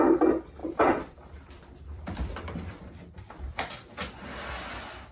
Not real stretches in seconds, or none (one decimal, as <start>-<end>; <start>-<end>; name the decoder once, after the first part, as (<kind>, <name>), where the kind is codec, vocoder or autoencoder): 0.6-3.7 (vocoder, BigVGAN v2)